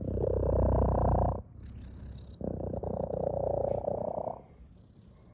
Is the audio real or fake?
real